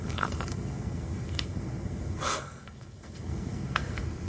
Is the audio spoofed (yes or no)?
yes